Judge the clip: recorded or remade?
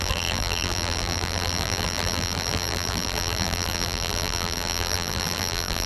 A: remade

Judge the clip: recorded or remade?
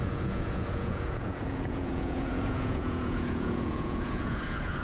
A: remade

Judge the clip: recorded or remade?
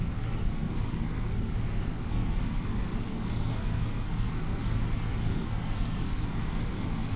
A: remade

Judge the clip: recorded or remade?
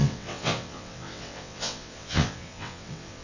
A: remade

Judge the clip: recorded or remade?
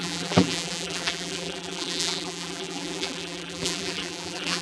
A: remade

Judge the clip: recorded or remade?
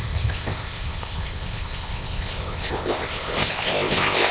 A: remade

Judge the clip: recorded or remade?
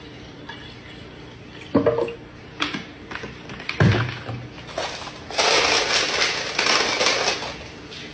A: recorded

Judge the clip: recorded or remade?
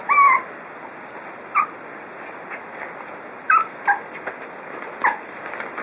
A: recorded